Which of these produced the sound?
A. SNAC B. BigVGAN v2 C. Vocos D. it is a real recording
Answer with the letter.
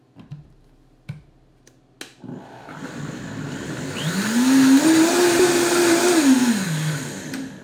D